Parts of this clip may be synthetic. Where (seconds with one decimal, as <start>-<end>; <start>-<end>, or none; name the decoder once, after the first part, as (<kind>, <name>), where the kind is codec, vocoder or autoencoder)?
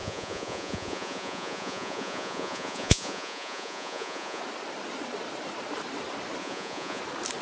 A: 0.0-4.4 (vocoder, Vocos); 6.4-7.0